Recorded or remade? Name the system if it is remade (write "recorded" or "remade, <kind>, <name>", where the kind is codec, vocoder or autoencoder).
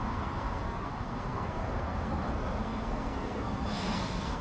remade, codec, SNAC